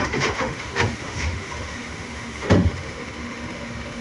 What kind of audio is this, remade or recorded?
remade